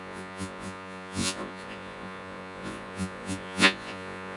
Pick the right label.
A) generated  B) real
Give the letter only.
A